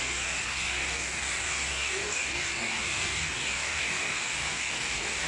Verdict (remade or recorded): remade